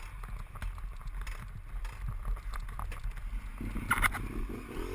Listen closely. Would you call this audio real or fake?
real